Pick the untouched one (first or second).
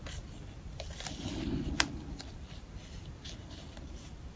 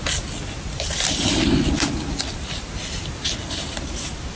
second